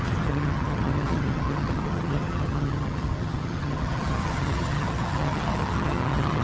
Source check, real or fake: fake